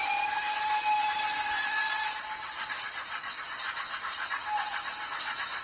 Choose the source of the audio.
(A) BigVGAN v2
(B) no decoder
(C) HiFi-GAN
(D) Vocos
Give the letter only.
A